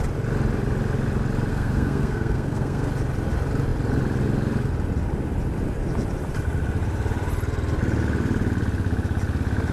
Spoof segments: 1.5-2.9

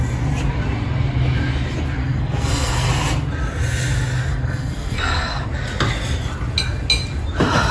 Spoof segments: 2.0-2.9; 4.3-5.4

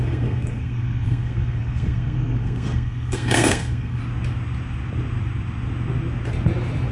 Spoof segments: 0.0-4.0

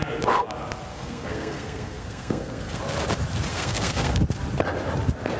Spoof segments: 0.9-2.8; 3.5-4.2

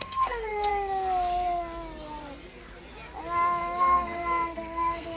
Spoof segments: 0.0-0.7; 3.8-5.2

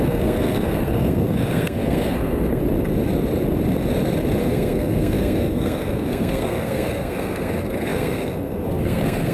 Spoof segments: 0.0-2.6; 4.4-9.3